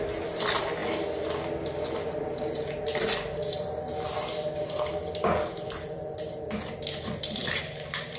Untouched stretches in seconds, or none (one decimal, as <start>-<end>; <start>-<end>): 0.0-8.2